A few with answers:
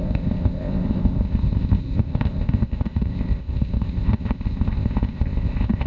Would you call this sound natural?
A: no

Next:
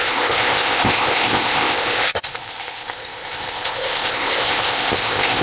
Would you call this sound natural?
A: no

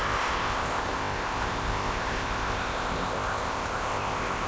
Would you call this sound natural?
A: no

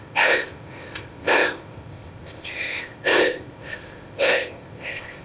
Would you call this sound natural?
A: no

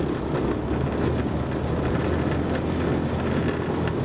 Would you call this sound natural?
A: yes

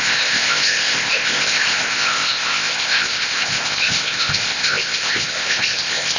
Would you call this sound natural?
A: no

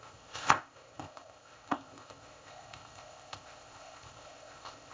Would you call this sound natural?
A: no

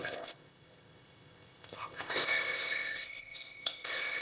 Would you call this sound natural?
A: no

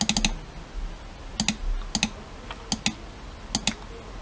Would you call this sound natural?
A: yes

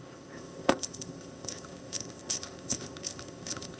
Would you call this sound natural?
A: no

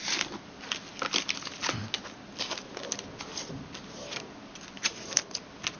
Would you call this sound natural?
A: yes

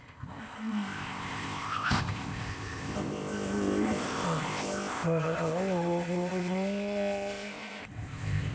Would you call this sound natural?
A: no